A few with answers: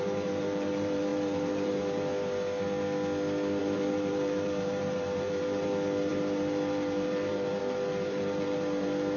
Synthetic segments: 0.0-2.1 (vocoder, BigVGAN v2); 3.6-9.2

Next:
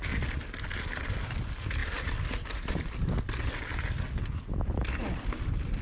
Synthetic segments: none

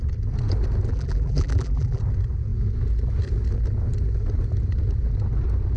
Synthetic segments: 0.9-2.0 (vocoder, BigVGAN v2)

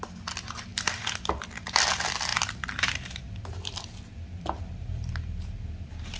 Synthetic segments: 0.7-1.3 (vocoder, BigVGAN v2); 2.3-6.2